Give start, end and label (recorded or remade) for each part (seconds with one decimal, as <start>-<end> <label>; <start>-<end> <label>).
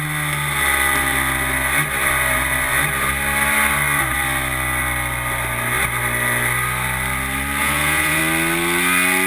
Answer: 0.0-7.6 recorded; 7.6-8.2 remade; 8.2-9.3 recorded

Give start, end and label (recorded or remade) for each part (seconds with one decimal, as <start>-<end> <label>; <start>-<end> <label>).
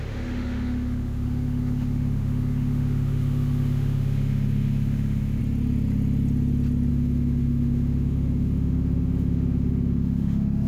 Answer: 0.0-5.4 remade; 5.4-6.9 recorded; 6.9-10.7 remade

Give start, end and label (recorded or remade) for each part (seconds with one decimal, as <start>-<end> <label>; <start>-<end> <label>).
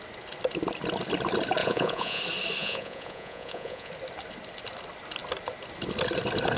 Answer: 0.0-1.6 recorded; 1.6-2.2 remade; 2.2-2.6 recorded; 2.6-3.9 remade; 3.9-6.6 recorded